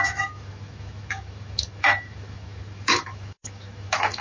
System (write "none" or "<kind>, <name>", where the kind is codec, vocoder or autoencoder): autoencoder, DAC-VAE